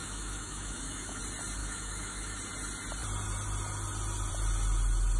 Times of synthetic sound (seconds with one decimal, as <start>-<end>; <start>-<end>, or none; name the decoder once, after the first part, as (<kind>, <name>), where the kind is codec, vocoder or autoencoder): 0.0-1.2 (autoencoder, DAC-VAE); 1.6-2.4